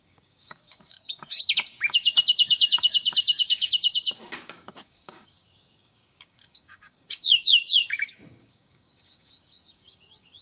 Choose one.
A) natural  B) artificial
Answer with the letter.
B